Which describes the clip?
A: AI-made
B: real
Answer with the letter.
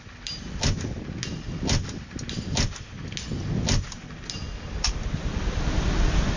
B